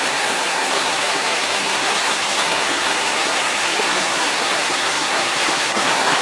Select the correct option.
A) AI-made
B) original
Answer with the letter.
A